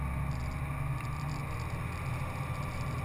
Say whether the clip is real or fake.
real